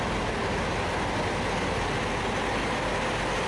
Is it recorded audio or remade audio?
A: recorded